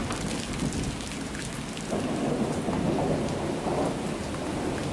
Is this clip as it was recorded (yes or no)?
yes